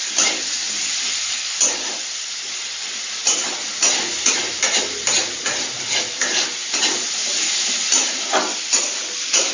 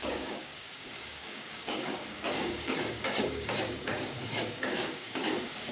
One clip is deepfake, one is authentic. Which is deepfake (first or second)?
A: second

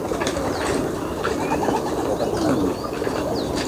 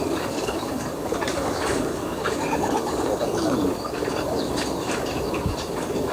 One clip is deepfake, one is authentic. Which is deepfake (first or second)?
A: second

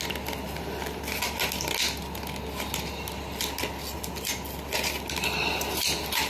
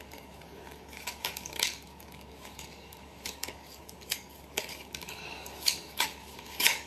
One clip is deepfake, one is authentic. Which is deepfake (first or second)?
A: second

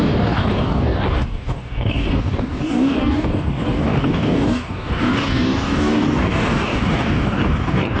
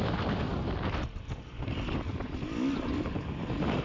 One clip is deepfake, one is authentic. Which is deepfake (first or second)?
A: first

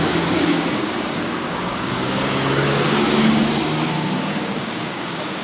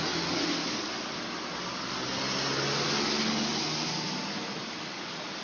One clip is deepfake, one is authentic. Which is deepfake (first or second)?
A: first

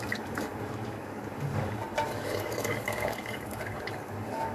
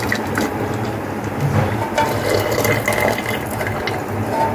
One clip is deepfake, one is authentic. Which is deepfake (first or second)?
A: first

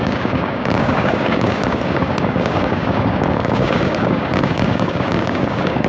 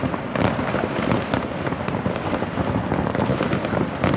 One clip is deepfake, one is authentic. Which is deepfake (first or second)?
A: first